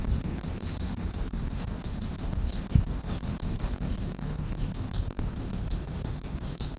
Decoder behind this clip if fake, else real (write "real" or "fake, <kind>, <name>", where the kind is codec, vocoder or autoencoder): fake, autoencoder, DAC-VAE